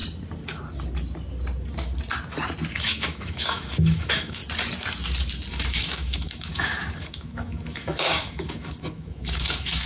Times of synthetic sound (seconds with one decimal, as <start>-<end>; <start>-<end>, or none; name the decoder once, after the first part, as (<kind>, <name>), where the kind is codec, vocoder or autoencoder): 2.7-4.4 (autoencoder, DAC-VAE); 5.5-9.9